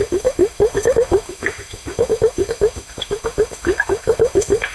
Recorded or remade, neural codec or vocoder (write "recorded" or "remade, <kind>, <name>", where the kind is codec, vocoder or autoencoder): remade, autoencoder, DAC-VAE